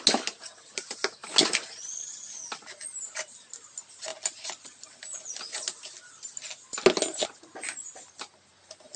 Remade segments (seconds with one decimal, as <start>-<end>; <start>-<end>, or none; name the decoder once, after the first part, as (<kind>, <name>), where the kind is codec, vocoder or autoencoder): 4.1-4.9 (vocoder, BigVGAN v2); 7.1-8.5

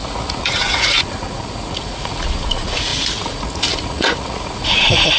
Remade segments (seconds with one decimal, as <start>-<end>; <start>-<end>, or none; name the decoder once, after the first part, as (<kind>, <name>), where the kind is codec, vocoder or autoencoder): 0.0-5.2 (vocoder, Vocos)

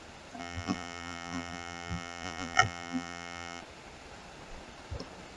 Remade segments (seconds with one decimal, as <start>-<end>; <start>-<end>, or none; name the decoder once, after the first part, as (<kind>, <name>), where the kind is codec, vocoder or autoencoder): 0.4-3.6 (vocoder, BigVGAN v2)